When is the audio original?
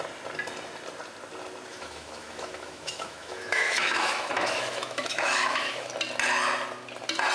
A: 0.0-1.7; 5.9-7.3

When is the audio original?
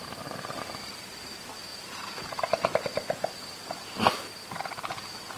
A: 0.0-5.4